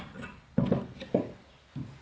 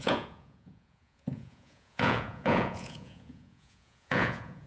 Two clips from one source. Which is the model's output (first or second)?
second